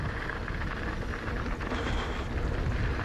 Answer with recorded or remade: recorded